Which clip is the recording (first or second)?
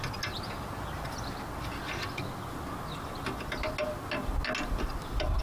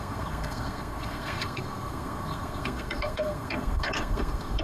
first